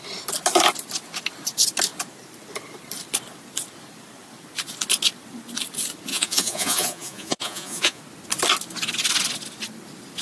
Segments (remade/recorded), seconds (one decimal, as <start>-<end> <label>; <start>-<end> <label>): 0.0-6.1 recorded; 6.1-8.0 remade; 8.0-10.2 recorded